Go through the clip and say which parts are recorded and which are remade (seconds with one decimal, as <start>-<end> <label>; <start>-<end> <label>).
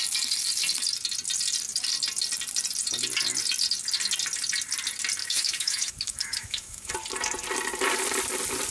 0.0-5.2 recorded; 5.2-6.9 remade; 6.9-8.7 recorded